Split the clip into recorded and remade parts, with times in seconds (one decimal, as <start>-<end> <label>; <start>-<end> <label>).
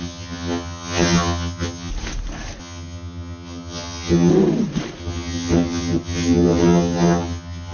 0.0-1.9 remade; 1.9-2.6 recorded; 2.6-4.3 remade; 4.3-5.0 recorded; 5.0-7.7 remade